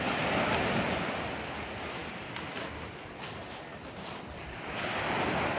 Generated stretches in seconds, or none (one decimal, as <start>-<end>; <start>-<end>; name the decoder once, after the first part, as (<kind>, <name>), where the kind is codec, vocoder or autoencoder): none